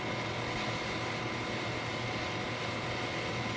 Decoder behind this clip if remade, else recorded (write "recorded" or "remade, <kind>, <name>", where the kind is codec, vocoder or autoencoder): recorded